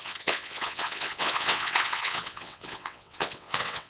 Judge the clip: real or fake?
fake